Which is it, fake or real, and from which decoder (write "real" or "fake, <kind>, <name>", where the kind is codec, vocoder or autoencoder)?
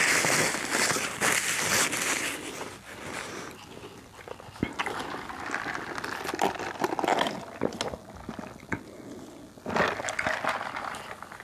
real